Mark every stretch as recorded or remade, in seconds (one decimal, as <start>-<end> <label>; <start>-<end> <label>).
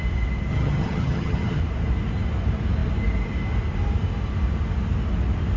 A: 0.0-0.5 recorded; 0.5-1.6 remade; 1.6-5.6 recorded